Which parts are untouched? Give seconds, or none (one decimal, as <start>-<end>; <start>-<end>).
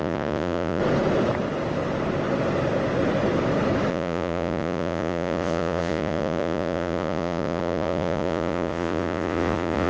0.8-3.9